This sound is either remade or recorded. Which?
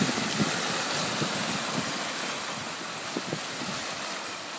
recorded